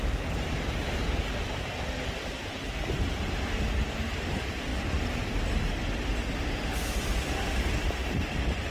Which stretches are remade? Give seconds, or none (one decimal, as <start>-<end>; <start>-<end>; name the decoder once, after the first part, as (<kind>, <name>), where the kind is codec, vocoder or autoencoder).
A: none